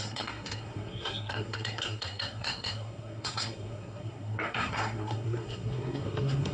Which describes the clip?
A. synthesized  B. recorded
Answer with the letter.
A